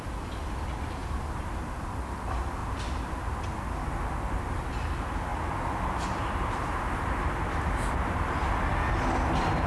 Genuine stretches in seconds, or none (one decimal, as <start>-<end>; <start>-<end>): 0.0-5.3; 7.2-9.7